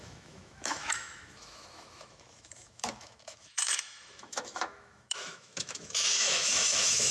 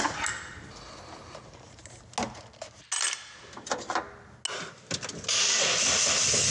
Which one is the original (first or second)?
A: second